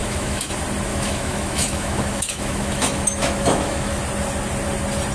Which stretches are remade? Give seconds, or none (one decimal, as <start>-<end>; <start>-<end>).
0.0-0.5; 0.9-4.0